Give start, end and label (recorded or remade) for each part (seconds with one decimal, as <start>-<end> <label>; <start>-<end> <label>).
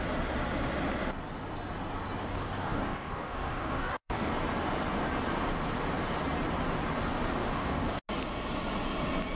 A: 0.0-2.2 recorded; 2.2-4.3 remade; 4.3-7.4 recorded; 7.4-8.0 remade; 8.0-9.3 recorded